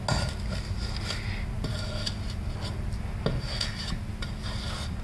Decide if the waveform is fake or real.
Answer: real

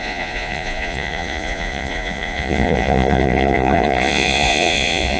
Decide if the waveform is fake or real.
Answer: fake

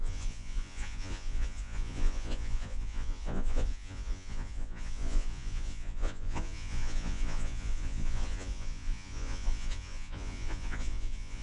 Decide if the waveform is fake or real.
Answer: fake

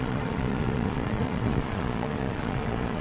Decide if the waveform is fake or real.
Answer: fake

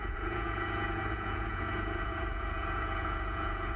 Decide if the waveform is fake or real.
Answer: fake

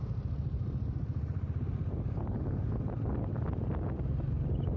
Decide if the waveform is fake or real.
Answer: real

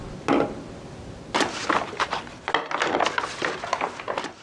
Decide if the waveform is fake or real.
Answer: real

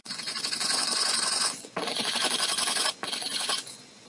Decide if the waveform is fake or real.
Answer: fake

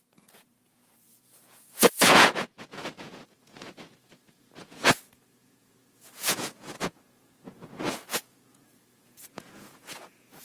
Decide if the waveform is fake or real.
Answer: fake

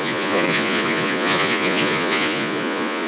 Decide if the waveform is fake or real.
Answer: fake